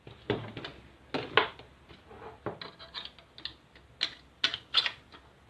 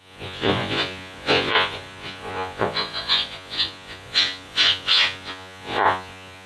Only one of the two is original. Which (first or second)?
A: first